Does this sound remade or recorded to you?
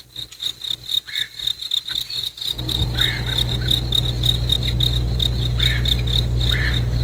recorded